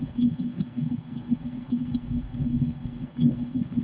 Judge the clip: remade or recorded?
remade